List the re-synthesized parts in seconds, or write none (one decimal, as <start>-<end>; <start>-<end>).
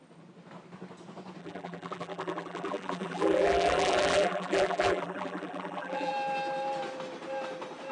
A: 1.4-6.1